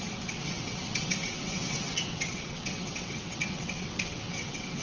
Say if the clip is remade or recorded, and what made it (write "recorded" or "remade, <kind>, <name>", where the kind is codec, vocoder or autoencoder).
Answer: remade, vocoder, WaveNeXt